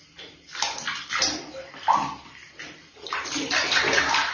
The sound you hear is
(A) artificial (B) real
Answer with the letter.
A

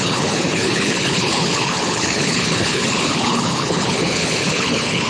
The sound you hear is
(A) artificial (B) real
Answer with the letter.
A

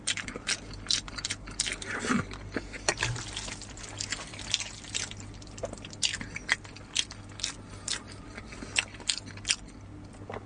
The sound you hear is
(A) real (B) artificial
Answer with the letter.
A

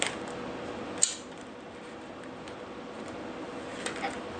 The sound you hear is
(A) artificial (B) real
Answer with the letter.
B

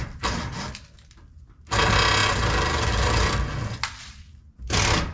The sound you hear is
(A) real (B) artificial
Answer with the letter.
A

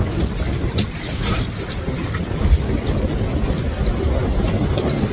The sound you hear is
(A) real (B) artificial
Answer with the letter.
A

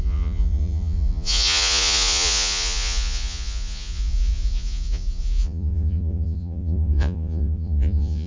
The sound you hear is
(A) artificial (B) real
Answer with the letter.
A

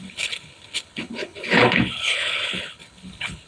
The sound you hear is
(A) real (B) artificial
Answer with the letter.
B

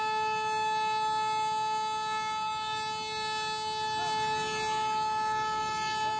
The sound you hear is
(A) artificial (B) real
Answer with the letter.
B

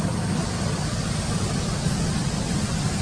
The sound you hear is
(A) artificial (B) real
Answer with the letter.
B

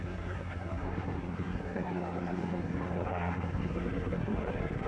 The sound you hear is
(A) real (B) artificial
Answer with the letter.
B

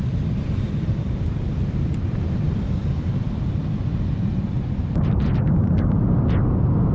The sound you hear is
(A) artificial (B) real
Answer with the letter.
B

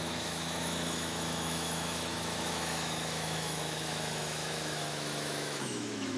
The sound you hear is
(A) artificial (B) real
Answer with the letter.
A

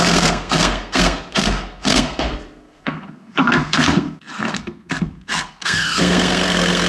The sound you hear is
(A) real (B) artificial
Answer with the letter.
B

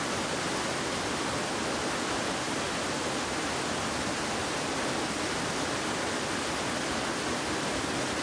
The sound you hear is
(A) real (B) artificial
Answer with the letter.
A